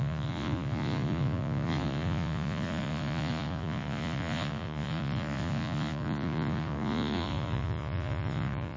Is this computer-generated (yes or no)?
yes